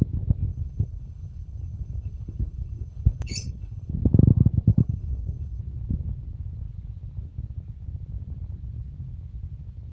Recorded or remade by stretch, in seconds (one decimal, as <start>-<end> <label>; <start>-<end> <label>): 0.0-0.5 recorded; 0.5-3.9 remade; 3.9-4.7 recorded; 4.7-5.6 remade; 5.6-9.9 recorded